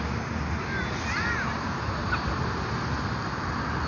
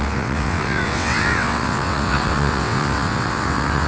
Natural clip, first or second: first